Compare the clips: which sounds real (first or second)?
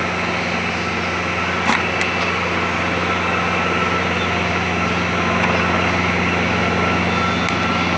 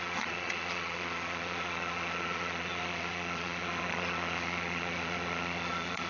first